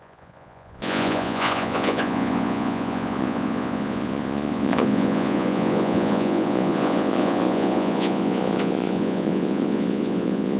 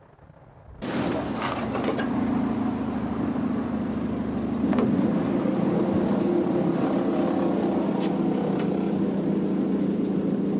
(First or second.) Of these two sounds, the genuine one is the second